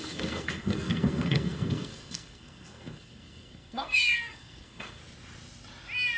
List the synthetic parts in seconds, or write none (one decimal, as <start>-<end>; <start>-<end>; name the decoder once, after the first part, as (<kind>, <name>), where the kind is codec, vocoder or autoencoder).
0.0-5.0 (codec, SNAC)